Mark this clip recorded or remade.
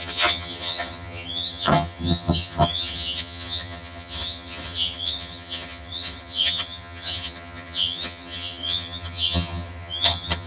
remade